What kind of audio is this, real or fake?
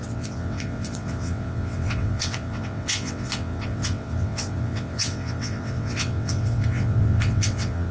fake